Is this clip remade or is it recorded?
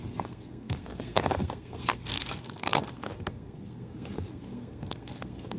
remade